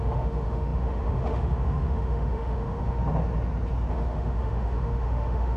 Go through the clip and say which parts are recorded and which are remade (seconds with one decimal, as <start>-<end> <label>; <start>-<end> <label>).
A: 0.0-3.0 remade; 3.0-3.9 recorded; 3.9-5.6 remade